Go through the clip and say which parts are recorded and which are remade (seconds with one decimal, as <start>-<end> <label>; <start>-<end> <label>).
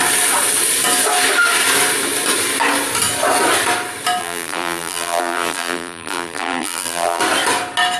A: 0.0-4.2 recorded; 4.2-7.2 remade; 7.2-8.0 recorded